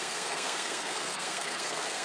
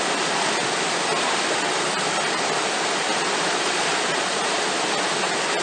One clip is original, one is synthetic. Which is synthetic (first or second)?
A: first